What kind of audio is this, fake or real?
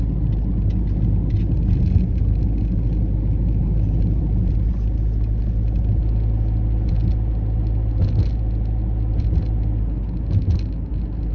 real